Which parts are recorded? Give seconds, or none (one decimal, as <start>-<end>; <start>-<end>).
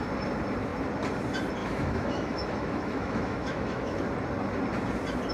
0.0-1.6; 4.0-5.3